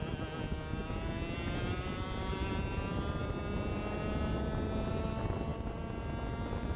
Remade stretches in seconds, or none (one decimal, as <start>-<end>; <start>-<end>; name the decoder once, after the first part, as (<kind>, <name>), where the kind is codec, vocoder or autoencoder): none